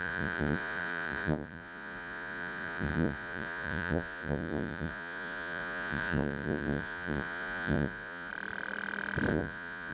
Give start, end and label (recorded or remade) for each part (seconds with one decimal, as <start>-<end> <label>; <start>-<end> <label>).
0.0-8.3 remade; 8.3-9.3 recorded; 9.3-9.9 remade